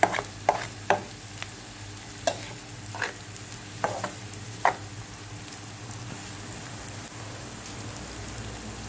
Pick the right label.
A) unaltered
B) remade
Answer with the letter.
A